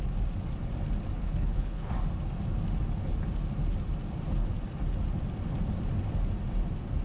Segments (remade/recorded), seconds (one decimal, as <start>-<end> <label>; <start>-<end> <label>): 0.0-1.2 recorded; 1.2-1.9 remade; 1.9-7.0 recorded